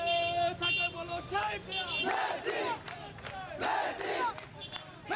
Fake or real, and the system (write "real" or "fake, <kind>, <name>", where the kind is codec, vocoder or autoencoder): real